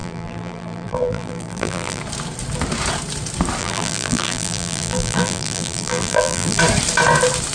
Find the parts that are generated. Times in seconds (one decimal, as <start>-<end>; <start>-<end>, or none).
0.0-2.0; 3.6-6.6